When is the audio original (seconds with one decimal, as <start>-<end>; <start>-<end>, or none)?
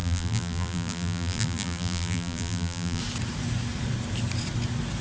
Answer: 3.0-5.0